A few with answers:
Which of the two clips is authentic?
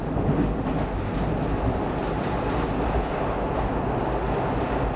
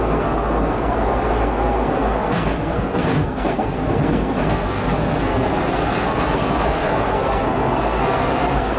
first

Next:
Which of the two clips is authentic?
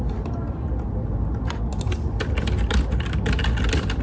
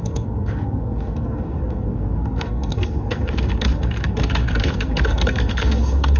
first